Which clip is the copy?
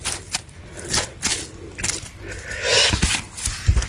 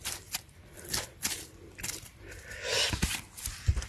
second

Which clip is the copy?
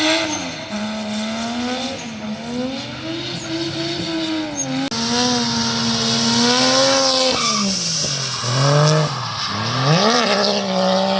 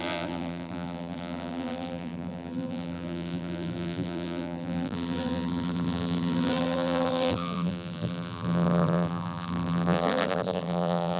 second